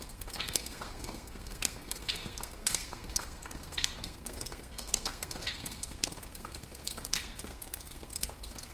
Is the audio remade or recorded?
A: remade